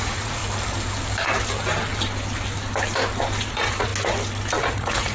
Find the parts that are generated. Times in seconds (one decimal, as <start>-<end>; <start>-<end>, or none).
0.0-0.4; 3.5-3.9; 4.6-5.1